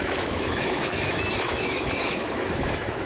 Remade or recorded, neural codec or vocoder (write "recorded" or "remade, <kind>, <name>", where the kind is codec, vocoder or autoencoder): remade, autoencoder, DAC-VAE